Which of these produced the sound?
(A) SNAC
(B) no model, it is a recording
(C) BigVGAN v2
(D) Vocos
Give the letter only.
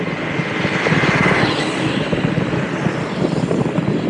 B